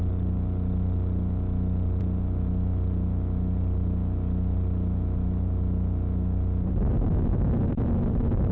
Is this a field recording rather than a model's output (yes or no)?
yes